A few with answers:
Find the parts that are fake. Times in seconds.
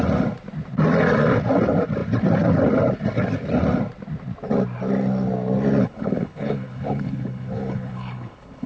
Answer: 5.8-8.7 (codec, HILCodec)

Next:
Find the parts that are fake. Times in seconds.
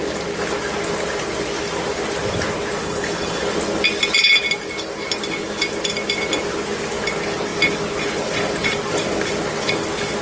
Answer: 2.8-3.4 (codec, HILCodec)